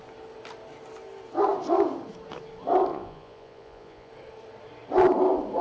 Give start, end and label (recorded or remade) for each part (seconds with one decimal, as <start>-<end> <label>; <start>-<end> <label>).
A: 0.0-2.9 recorded; 2.9-4.1 remade; 4.1-5.6 recorded